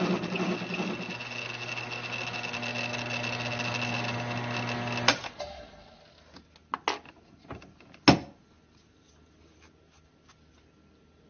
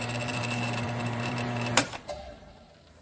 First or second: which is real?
first